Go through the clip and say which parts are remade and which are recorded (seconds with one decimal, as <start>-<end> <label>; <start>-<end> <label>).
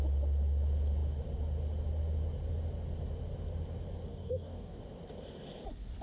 0.0-4.1 recorded; 4.1-4.8 remade; 4.8-6.0 recorded